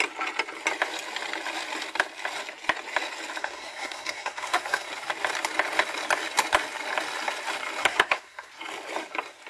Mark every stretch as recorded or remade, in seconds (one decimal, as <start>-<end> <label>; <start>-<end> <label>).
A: 0.0-3.4 recorded; 3.4-4.9 remade; 4.9-7.8 recorded; 7.8-8.5 remade; 8.5-9.5 recorded